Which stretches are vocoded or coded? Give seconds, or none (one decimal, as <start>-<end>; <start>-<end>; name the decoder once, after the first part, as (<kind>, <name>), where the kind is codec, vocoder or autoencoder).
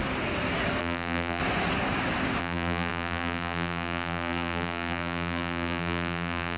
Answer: 0.8-1.4 (vocoder, BigVGAN v2); 2.4-6.6